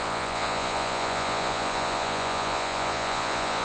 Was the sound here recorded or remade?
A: remade